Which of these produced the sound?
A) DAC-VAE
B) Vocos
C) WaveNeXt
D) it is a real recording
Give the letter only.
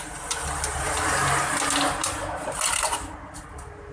D